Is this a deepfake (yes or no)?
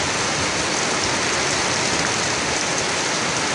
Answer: no